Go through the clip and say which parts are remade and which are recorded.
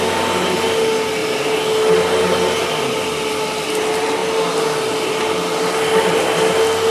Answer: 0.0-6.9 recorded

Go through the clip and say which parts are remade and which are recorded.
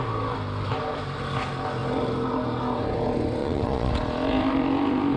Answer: 0.0-3.4 recorded; 3.4-3.9 remade; 3.9-5.2 recorded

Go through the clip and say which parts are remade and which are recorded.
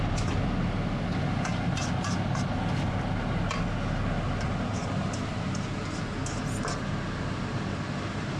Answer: 0.0-5.3 recorded; 5.3-5.8 remade; 5.8-8.4 recorded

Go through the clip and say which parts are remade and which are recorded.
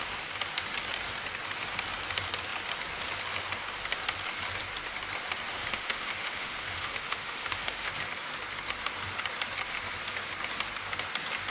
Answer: 0.0-5.5 recorded; 5.5-7.9 remade; 7.9-11.5 recorded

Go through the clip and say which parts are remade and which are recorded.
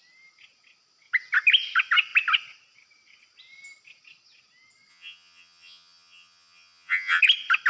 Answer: 0.0-4.9 recorded; 4.9-7.2 remade; 7.2-7.7 recorded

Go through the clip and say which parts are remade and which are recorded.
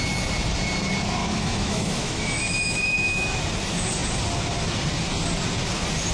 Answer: 0.0-1.2 recorded; 1.2-3.4 remade; 3.4-6.1 recorded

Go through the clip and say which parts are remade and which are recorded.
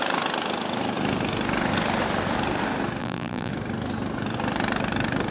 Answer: 0.0-3.0 recorded; 3.0-3.5 remade; 3.5-5.3 recorded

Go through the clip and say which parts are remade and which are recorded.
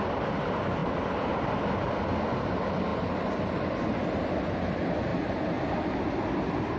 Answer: 0.0-6.8 recorded